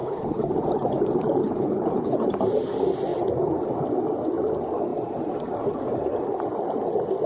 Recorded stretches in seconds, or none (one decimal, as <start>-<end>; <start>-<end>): 0.5-1.4; 2.3-7.3

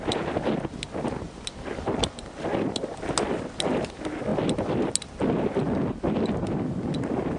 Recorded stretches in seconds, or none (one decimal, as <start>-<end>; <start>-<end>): 0.0-7.4

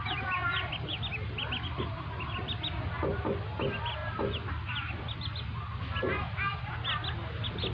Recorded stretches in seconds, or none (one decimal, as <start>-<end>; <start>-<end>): 0.0-7.7

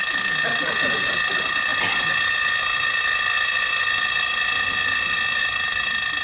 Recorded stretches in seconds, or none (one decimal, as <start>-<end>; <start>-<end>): 0.0-6.2

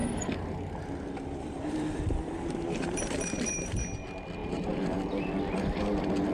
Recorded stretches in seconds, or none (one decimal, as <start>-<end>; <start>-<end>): 3.8-4.4; 5.4-6.3

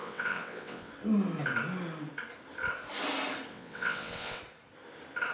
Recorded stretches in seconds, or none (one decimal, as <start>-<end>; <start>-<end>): 0.9-3.5; 4.4-5.3